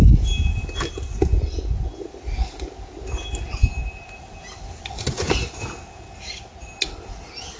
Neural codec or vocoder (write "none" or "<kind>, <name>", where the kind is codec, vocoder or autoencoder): none